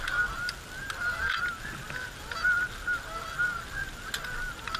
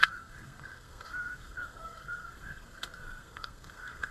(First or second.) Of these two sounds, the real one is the first